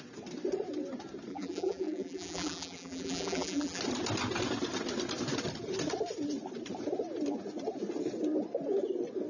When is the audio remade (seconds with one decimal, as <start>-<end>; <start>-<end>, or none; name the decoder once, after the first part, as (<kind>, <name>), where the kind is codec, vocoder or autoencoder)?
1.3-3.8 (vocoder, BigVGAN v2)